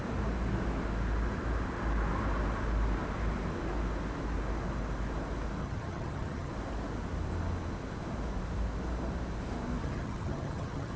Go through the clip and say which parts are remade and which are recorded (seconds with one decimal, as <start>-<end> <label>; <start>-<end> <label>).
0.0-5.6 recorded; 5.6-6.5 remade; 6.5-9.8 recorded; 9.8-11.0 remade